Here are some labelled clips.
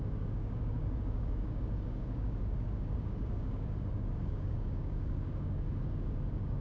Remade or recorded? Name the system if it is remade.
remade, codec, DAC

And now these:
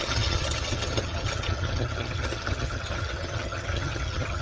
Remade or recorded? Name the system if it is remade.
remade, vocoder, HiFi-GAN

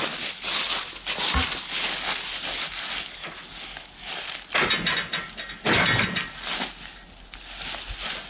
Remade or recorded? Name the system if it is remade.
recorded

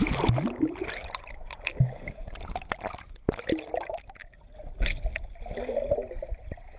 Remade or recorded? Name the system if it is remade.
recorded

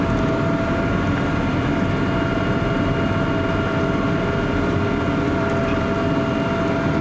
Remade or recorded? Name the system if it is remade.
recorded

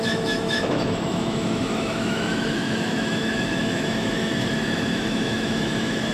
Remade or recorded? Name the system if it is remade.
remade, autoencoder, DAC-VAE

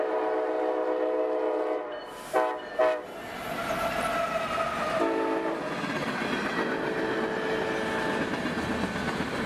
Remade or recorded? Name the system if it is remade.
recorded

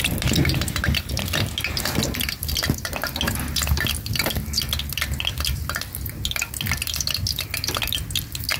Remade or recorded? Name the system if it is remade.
recorded